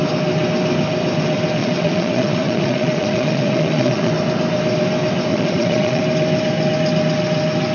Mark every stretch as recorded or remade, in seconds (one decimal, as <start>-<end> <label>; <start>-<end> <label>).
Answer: 0.0-1.6 recorded; 1.6-4.1 remade; 4.1-5.3 recorded; 5.3-6.0 remade; 6.0-7.7 recorded